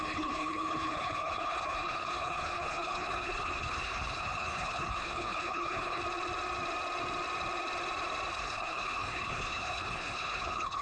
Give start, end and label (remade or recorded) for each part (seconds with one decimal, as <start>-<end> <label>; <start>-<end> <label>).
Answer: 0.0-6.0 remade; 6.0-8.3 recorded; 8.3-10.8 remade

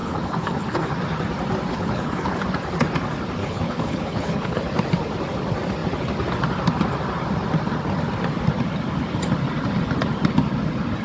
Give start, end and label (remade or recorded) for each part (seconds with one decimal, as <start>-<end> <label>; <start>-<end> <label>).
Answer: 0.0-0.9 remade; 0.9-1.7 recorded; 1.7-2.4 remade; 2.4-3.4 recorded; 3.4-4.6 remade; 4.6-11.0 recorded

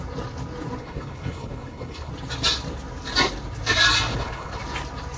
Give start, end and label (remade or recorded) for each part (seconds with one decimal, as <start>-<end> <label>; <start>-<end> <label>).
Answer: 0.0-0.8 recorded; 0.8-2.1 remade; 2.1-4.1 recorded; 4.1-4.6 remade; 4.6-5.2 recorded

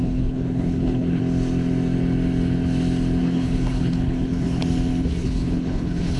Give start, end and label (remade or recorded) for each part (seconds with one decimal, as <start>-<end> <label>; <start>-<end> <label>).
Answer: 0.0-1.2 remade; 1.2-3.2 recorded; 3.2-4.6 remade; 4.6-5.1 recorded; 5.1-6.2 remade

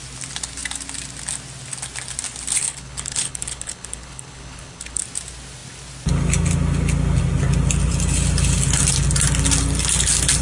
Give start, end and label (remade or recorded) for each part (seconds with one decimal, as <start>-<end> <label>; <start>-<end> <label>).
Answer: 0.0-2.6 recorded; 2.6-5.0 remade; 5.0-10.4 recorded

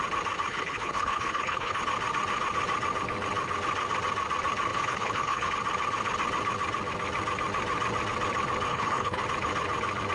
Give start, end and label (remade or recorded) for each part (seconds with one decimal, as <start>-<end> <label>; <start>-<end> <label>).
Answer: 0.0-0.5 recorded; 0.5-1.8 remade; 1.8-4.7 recorded; 4.7-5.5 remade; 5.5-8.7 recorded; 8.7-9.2 remade; 9.2-10.1 recorded

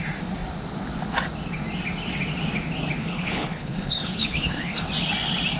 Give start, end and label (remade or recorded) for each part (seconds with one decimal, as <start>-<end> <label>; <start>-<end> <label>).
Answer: 0.0-3.0 recorded; 3.0-4.9 remade; 4.9-5.6 recorded

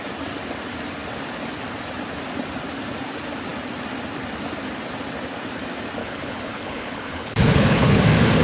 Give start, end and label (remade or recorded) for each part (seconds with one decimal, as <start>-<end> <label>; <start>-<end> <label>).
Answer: 0.0-6.0 recorded; 6.0-8.0 remade; 8.0-8.4 recorded